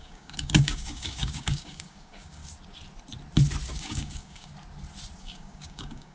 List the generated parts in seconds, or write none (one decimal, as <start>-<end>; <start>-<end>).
0.0-2.4; 3.7-4.5; 5.2-6.1